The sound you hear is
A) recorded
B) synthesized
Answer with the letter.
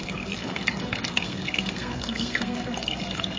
B